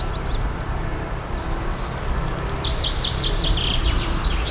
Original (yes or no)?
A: no